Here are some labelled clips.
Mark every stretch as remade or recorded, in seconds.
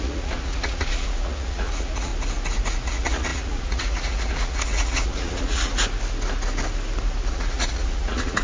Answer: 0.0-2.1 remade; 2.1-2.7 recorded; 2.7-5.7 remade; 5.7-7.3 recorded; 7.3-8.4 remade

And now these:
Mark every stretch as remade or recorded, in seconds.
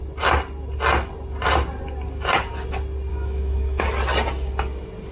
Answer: 0.0-3.1 recorded; 3.1-3.8 remade; 3.8-5.1 recorded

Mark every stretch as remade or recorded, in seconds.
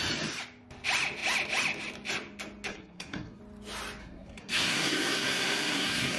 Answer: 0.0-2.7 recorded; 2.7-3.4 remade; 3.4-4.0 recorded; 4.0-6.2 remade